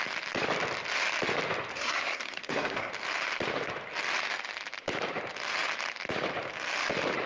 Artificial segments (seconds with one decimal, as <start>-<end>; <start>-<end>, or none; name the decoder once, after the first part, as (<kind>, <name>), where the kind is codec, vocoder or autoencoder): 1.7-2.9 (codec, SNAC)